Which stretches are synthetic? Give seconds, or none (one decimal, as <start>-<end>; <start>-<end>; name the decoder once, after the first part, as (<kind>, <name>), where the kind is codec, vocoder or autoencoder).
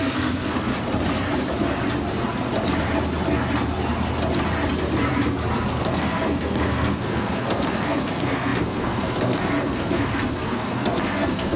0.0-0.7 (codec, SNAC); 5.7-11.6